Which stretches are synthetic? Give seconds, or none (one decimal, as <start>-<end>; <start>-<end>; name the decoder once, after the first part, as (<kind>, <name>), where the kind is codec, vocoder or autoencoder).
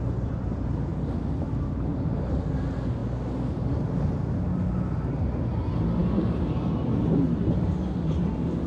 none